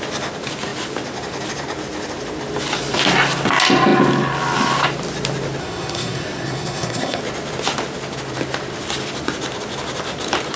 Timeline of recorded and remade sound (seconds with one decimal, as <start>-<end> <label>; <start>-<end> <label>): 0.0-5.6 recorded; 5.6-7.2 remade; 7.2-10.6 recorded